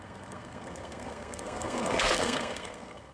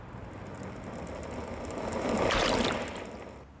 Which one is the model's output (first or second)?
first